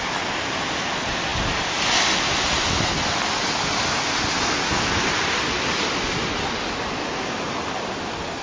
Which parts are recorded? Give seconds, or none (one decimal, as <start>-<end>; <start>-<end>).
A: 0.0-8.4